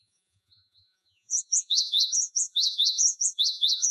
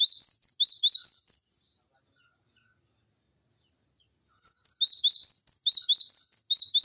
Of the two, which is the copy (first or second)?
first